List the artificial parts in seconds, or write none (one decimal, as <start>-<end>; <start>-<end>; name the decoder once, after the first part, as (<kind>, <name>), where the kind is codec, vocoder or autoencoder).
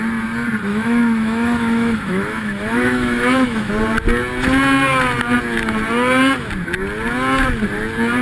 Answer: 0.7-3.7 (autoencoder, DAC-VAE)